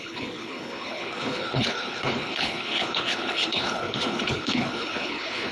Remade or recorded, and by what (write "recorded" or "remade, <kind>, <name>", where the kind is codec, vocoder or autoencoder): remade, codec, HILCodec